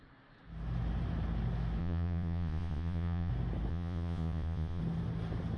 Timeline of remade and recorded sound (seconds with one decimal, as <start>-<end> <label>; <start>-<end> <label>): 0.0-1.8 recorded; 1.8-3.3 remade; 3.3-3.7 recorded; 3.7-4.8 remade; 4.8-5.6 recorded